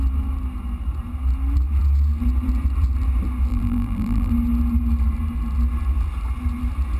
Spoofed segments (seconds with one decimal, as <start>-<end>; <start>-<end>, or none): 3.5-4.3